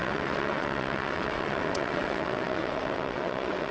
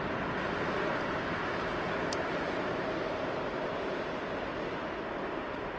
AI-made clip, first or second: first